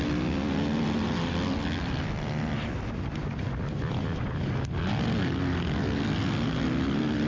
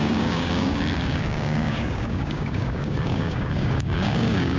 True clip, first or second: first